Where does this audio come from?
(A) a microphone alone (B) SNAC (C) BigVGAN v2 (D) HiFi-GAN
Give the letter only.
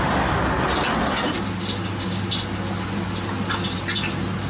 A